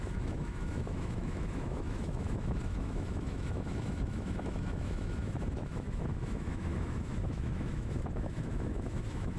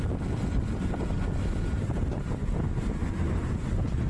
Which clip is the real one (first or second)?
second